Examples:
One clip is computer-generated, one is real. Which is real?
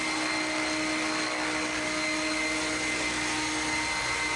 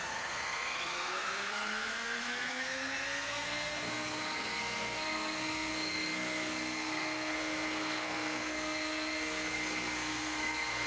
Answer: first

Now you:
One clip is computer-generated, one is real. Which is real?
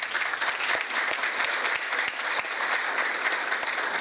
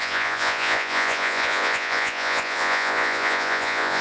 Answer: first